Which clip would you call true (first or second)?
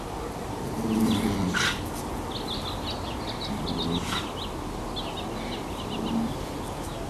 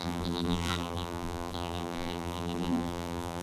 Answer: first